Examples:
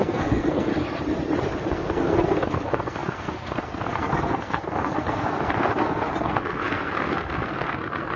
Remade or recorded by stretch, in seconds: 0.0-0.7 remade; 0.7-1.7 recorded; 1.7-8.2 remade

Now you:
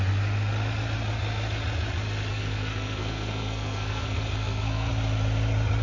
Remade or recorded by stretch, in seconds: 0.0-2.3 recorded; 2.3-4.9 remade; 4.9-5.8 recorded

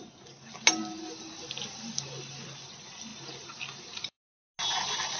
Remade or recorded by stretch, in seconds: 0.0-5.2 recorded

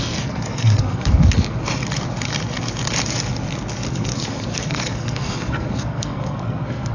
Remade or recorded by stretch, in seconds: 0.0-1.6 remade; 1.6-3.9 recorded; 3.9-6.9 remade

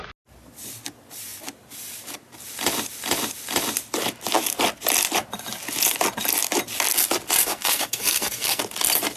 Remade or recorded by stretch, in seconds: 0.0-7.4 recorded; 7.4-8.6 remade; 8.6-9.2 recorded

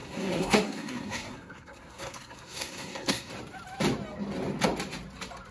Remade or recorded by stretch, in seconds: 0.0-3.3 remade; 3.3-5.5 recorded

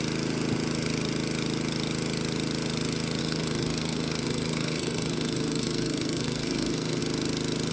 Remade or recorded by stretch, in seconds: 0.0-3.2 recorded; 3.2-7.0 remade; 7.0-7.7 recorded

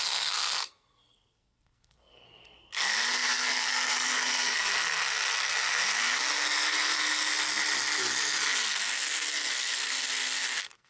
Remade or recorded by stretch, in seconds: 0.0-7.3 remade; 7.3-8.0 recorded; 8.0-10.9 remade